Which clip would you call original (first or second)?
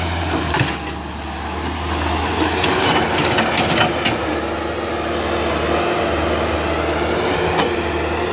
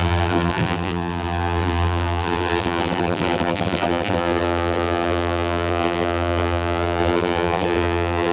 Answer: first